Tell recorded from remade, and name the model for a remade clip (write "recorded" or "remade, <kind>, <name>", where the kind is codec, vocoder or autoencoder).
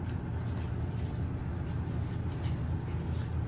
recorded